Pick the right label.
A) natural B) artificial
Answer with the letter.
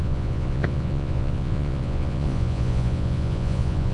B